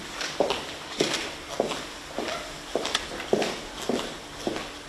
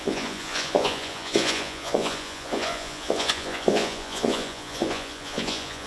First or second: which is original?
first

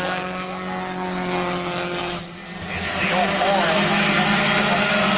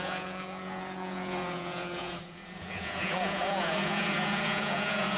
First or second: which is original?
first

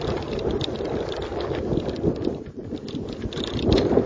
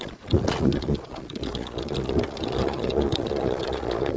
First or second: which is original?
first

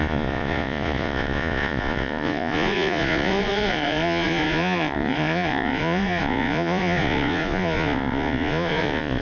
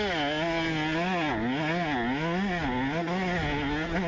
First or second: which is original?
second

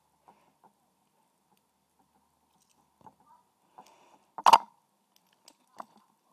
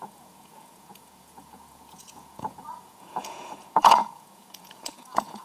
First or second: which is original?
first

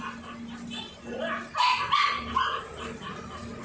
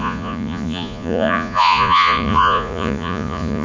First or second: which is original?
first